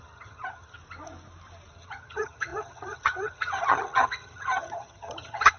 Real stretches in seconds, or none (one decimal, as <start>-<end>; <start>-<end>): 0.8-1.7